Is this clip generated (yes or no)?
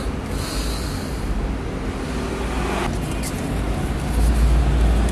no